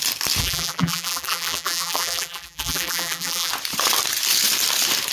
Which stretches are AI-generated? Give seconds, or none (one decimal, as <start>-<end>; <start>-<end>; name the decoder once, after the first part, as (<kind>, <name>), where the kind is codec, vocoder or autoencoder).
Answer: 0.4-3.5 (vocoder, BigVGAN v2)